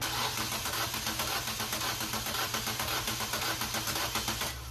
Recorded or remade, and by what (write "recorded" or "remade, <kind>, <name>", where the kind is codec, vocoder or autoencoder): recorded